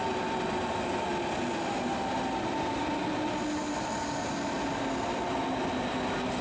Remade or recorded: recorded